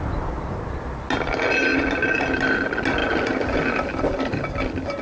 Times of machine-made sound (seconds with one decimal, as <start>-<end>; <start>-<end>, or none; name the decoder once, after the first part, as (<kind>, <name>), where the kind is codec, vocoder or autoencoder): none